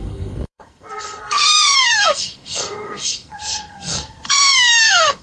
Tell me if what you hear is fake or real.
fake